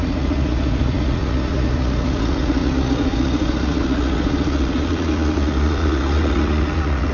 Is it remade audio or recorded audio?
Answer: remade